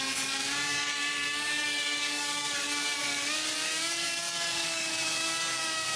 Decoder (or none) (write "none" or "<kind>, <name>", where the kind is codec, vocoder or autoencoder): codec, DAC